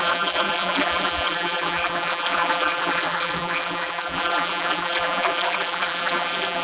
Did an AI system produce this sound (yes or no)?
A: yes